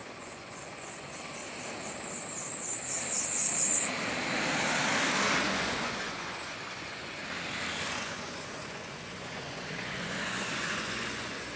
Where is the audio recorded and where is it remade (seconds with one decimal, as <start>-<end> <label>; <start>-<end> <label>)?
0.0-1.4 remade; 1.4-5.4 recorded; 5.4-7.2 remade; 7.2-7.9 recorded; 7.9-11.6 remade